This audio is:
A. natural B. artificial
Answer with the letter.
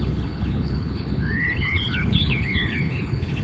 B